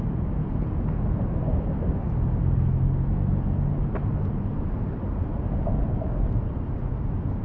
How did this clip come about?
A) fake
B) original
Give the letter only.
B